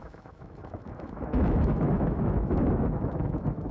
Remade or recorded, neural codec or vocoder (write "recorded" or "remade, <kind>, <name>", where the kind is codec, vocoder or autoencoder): remade, autoencoder, DAC-VAE